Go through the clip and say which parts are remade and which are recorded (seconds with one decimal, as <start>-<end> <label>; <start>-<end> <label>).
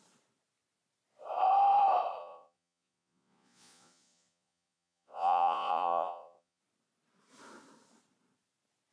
0.0-2.2 recorded; 2.2-6.6 remade; 6.6-8.9 recorded